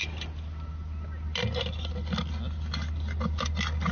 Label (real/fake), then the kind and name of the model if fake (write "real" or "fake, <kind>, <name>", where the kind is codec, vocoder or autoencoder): real